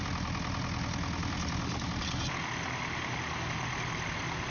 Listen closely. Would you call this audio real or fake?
real